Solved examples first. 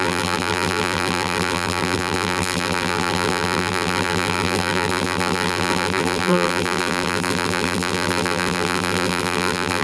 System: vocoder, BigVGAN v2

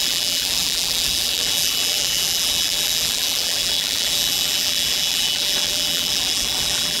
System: vocoder, BigVGAN v2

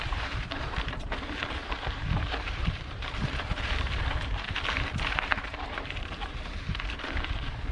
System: vocoder, BigVGAN v2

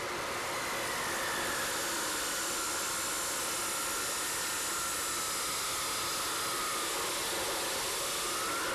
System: none